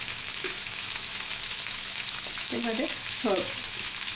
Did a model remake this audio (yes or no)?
yes